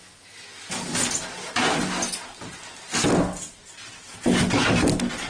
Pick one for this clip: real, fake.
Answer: real